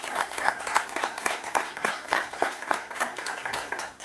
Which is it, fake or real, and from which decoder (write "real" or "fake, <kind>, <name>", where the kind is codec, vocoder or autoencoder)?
fake, codec, SNAC